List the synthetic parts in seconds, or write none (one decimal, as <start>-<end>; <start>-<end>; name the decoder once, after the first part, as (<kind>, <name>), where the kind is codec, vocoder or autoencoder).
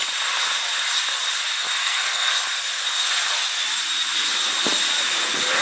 1.8-2.3 (codec, SNAC)